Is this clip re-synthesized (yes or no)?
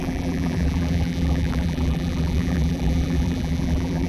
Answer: yes